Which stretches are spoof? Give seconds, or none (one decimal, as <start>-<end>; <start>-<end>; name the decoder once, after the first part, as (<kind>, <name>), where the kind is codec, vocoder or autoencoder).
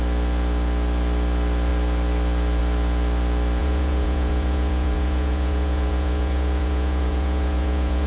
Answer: 3.6-8.1 (vocoder, Vocos)